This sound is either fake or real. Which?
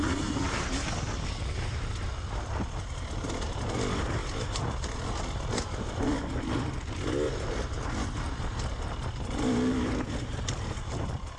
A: real